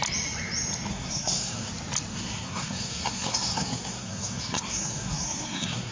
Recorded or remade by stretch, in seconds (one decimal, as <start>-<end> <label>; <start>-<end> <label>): 0.0-0.9 recorded; 0.9-1.7 remade; 1.7-2.1 recorded; 2.1-5.9 remade